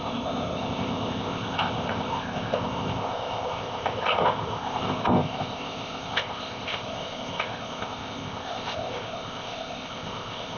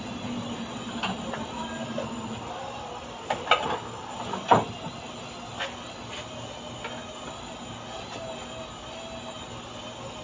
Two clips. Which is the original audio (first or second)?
second